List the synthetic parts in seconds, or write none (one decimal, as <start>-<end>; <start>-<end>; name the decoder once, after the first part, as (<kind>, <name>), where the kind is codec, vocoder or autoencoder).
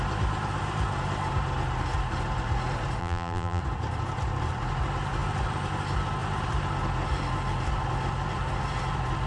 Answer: 3.0-3.6 (vocoder, BigVGAN v2)